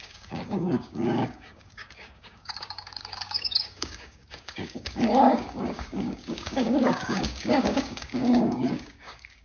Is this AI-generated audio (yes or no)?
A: yes